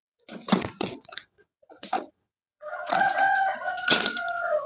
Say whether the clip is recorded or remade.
remade